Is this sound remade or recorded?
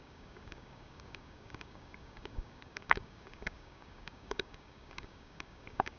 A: remade